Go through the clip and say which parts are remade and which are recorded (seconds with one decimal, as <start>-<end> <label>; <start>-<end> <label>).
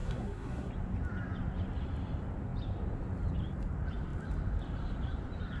0.0-0.7 remade; 0.7-5.6 recorded